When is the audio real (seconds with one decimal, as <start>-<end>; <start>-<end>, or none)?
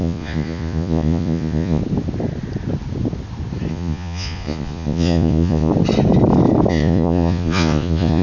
1.8-3.7; 5.7-6.7